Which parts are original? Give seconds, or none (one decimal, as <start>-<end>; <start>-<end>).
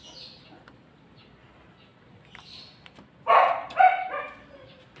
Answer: 0.0-1.9; 4.2-5.0